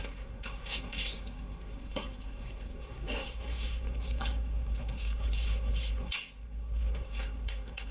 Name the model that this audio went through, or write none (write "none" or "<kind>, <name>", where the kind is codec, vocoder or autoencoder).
codec, SNAC